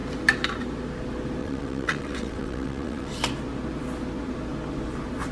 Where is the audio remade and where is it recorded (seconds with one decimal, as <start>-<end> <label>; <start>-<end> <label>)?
0.0-1.4 recorded; 1.4-3.1 remade; 3.1-5.3 recorded